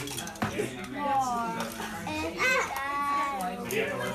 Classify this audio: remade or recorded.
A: recorded